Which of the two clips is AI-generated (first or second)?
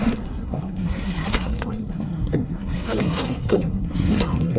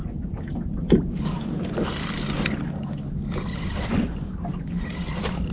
first